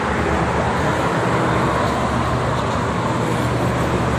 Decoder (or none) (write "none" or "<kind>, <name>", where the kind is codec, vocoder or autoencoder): none